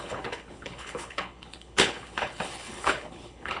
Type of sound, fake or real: fake